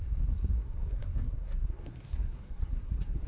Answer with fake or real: fake